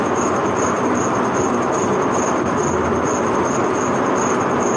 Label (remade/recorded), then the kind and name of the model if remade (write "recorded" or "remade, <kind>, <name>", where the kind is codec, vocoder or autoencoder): recorded